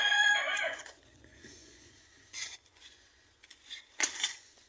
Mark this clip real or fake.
fake